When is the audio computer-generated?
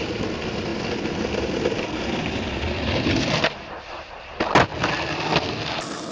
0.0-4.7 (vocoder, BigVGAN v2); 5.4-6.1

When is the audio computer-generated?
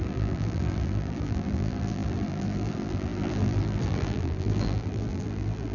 0.0-5.7 (vocoder, BigVGAN v2)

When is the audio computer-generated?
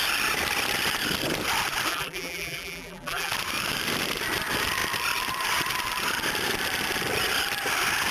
1.9-3.3 (vocoder, BigVGAN v2)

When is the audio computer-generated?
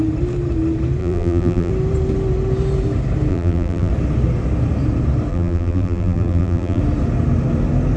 1.0-1.7 (vocoder, BigVGAN v2); 3.3-3.9; 5.3-6.8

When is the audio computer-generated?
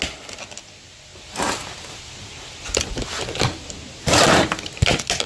1.1-2.0 (vocoder, BigVGAN v2)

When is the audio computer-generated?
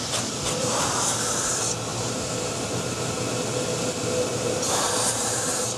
1.9-2.7 (vocoder, BigVGAN v2); 4.3-5.8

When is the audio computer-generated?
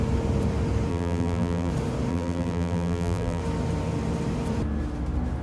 0.9-1.7 (vocoder, BigVGAN v2); 2.1-3.4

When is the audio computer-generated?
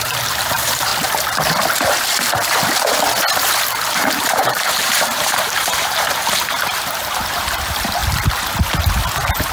0.0-0.9 (vocoder, BigVGAN v2); 3.9-8.0